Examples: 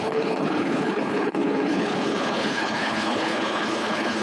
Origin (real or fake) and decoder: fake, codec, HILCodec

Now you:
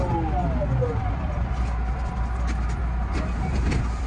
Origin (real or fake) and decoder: real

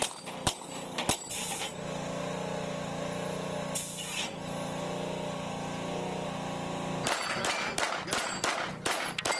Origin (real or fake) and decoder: real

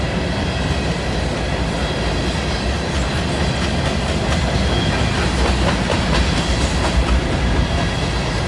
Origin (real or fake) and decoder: real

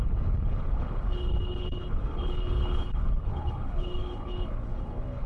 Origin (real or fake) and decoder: fake, codec, HILCodec